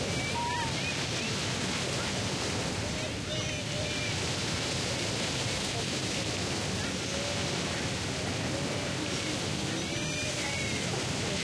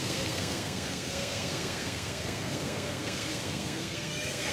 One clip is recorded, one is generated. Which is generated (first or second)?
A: second